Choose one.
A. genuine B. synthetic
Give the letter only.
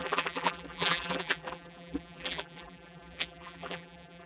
B